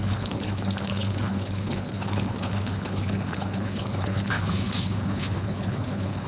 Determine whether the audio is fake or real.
fake